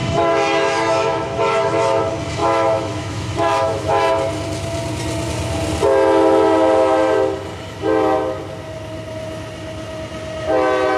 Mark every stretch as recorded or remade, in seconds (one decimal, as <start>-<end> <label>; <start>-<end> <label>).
0.0-2.0 remade; 2.0-2.4 recorded; 2.4-4.1 remade; 4.1-11.0 recorded